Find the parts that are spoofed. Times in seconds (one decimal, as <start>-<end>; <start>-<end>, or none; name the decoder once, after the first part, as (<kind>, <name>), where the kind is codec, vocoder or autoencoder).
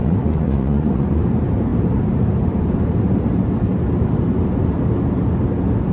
0.0-1.2 (vocoder, Vocos)